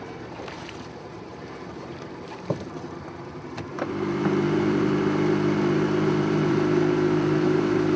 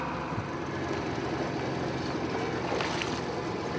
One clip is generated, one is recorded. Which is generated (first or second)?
first